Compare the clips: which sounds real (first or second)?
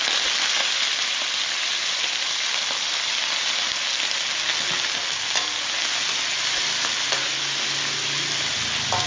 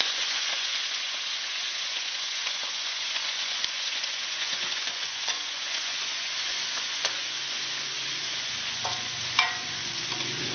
first